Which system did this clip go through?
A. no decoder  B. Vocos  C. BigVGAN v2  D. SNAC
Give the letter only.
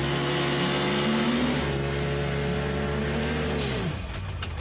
A